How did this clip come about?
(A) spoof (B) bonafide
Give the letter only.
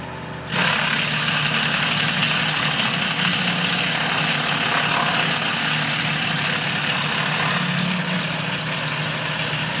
B